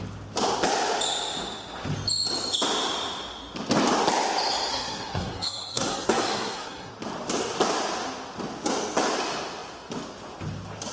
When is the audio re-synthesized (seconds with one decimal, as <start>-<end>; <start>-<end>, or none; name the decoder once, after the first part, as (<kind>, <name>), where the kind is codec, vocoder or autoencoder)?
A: 4.7-6.9 (codec, SNAC)